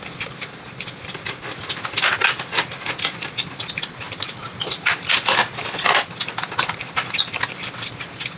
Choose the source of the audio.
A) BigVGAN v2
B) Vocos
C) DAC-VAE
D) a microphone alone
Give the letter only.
D